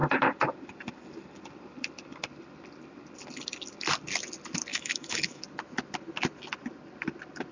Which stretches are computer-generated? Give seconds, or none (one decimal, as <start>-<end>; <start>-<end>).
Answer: 4.7-5.4